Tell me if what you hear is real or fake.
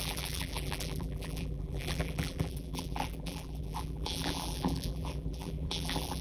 fake